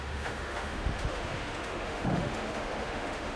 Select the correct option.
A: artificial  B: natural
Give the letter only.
A